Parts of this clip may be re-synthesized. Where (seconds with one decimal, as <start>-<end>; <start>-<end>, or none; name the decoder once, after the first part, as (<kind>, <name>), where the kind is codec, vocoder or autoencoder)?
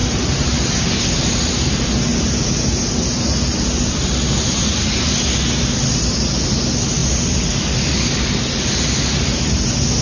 0.0-0.7 (vocoder, BigVGAN v2); 2.1-4.0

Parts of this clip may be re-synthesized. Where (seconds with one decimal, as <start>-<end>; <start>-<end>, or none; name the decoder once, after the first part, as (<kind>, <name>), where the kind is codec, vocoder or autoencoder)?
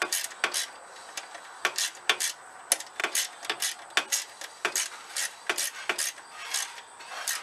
none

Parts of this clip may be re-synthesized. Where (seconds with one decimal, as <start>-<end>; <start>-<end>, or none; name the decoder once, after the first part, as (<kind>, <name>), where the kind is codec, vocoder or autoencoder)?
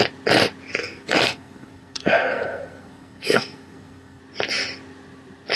0.8-4.2 (codec, SNAC)